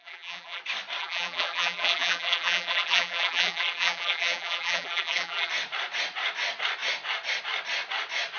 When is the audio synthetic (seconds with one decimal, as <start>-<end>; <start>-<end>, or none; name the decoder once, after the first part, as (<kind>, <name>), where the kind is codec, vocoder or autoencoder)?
0.0-0.6 (vocoder, BigVGAN v2); 1.0-5.5